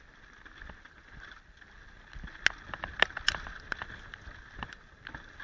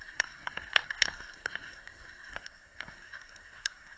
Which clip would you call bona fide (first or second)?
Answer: first